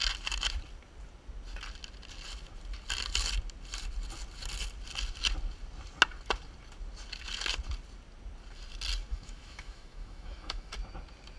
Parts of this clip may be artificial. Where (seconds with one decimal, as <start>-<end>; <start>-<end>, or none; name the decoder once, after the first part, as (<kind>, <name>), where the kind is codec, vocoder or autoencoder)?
9.1-10.7 (autoencoder, DAC-VAE)